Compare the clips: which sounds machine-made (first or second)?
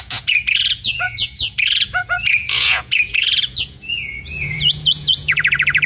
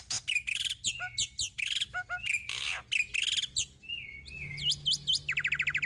first